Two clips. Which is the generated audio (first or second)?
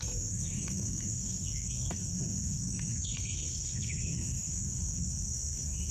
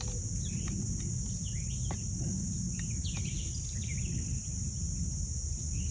first